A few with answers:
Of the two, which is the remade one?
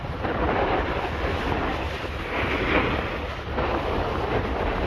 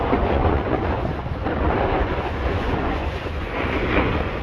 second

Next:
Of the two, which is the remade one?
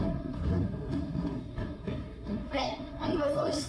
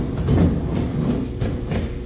first